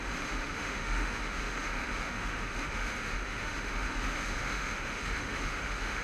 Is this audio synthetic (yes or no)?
yes